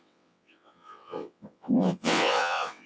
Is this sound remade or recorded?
remade